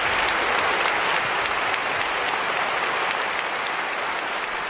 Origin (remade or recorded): recorded